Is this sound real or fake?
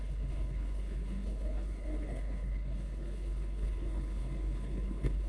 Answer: fake